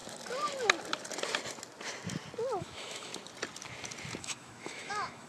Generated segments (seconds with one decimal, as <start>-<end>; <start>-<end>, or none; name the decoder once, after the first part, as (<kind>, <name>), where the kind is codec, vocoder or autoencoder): 2.6-3.1 (autoencoder, DAC-VAE); 4.2-5.3